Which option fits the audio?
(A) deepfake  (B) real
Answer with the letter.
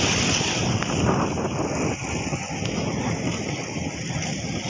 B